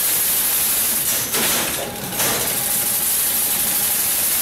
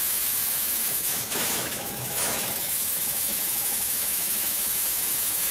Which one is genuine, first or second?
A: first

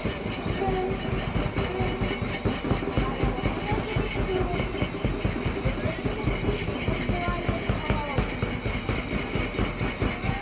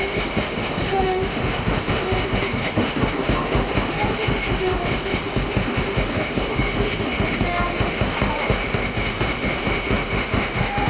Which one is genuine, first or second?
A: first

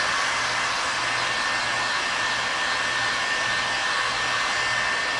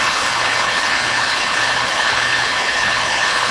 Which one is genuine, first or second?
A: first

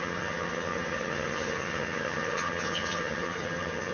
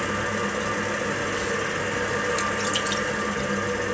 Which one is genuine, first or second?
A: second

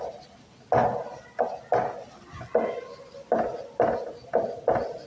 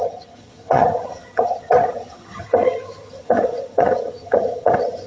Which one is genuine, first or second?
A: first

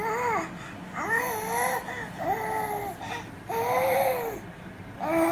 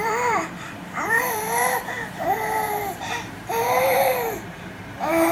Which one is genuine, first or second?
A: first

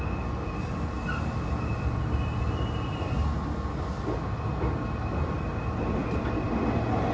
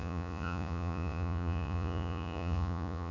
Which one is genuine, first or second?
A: first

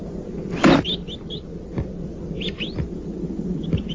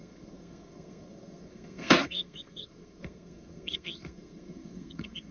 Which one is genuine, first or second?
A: first